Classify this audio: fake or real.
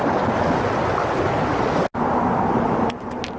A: real